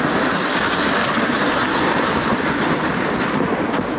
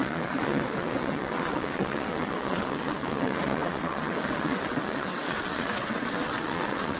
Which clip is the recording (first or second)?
first